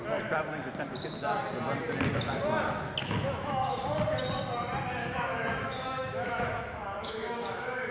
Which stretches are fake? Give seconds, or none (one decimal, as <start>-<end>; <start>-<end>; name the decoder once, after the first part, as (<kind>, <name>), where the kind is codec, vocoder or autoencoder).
3.0-3.8 (autoencoder, DAC-VAE); 5.0-7.9